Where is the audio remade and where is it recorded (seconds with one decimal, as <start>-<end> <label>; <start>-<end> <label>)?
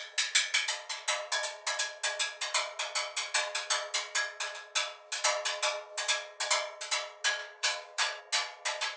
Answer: 0.0-7.4 recorded; 7.4-8.2 remade; 8.2-9.0 recorded